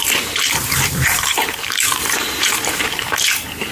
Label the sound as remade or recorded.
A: remade